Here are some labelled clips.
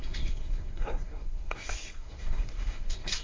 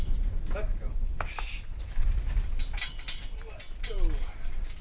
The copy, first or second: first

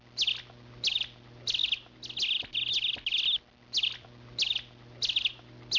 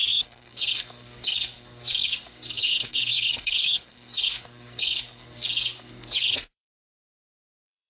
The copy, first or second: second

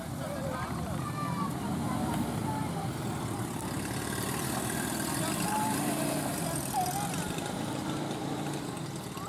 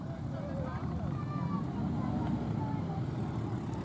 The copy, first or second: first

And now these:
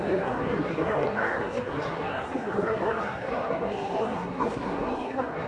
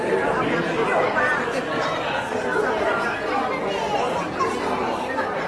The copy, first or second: first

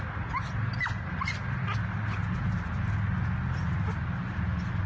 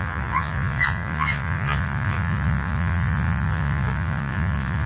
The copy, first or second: second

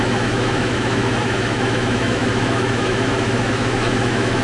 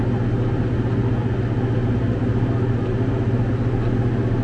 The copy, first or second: first